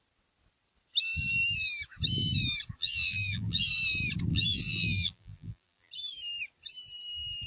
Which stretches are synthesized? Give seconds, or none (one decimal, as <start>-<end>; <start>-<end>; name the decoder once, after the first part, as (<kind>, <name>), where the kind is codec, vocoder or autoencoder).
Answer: 2.8-3.7 (vocoder, BigVGAN v2); 4.3-5.9